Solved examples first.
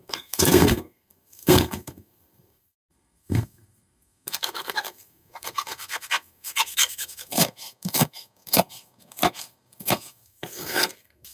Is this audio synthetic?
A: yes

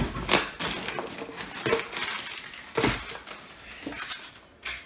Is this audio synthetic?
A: no